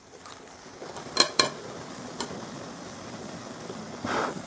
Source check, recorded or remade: remade